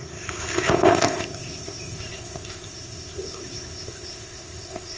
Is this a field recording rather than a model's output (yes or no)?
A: no